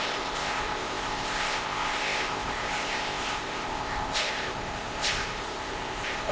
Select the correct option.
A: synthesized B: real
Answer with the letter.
A